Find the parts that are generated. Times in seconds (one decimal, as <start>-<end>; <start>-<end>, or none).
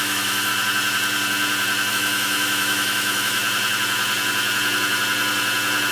0.0-0.5; 1.9-3.4